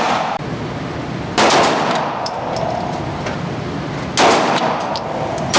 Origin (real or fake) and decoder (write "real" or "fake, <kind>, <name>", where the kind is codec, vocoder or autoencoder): real